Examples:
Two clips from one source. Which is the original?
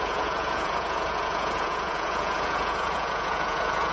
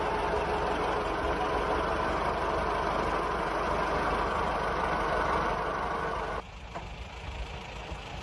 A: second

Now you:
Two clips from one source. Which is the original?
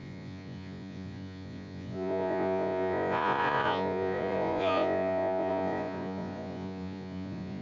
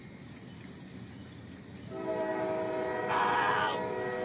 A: second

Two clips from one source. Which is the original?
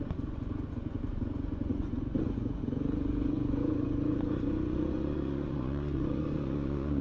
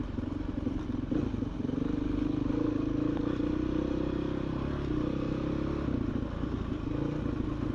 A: second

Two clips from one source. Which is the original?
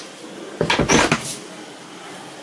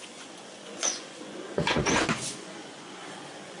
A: first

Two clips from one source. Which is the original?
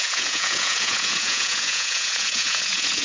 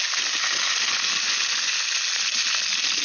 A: second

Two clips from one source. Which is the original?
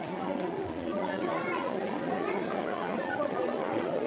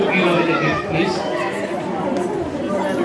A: second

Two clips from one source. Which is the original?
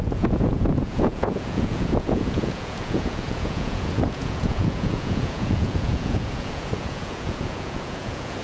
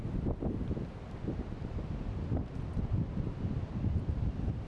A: second